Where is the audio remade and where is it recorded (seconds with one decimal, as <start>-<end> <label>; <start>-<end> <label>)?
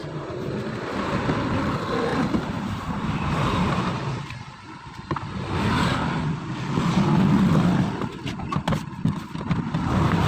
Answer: 0.0-0.5 remade; 0.5-2.1 recorded; 2.1-3.8 remade; 3.8-10.3 recorded